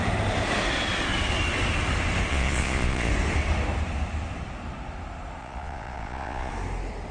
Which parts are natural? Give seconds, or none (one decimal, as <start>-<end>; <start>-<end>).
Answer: 0.0-2.3; 3.1-5.4; 6.5-7.1